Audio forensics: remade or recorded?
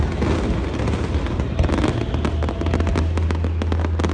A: recorded